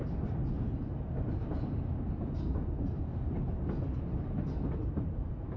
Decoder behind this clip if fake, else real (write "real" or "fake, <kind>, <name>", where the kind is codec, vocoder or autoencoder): fake, vocoder, BigVGAN v2